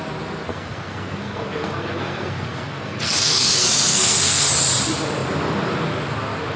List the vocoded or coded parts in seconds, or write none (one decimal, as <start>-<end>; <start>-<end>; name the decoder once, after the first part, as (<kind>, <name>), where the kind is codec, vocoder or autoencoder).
0.5-4.5 (codec, SNAC)